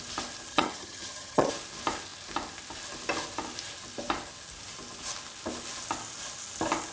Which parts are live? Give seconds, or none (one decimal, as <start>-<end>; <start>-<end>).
0.0-0.5; 1.5-6.9